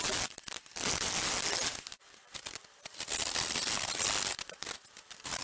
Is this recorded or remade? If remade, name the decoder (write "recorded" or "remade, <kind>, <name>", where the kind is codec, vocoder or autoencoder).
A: remade, vocoder, BigVGAN v2